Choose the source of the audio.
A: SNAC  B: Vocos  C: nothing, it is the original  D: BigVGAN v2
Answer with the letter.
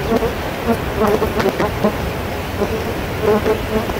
C